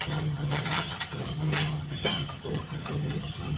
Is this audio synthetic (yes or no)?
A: yes